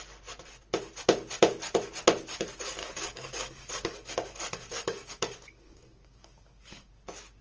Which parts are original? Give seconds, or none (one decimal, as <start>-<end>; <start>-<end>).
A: 0.0-2.8; 6.9-7.4